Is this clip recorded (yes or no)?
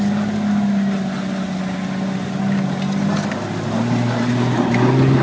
yes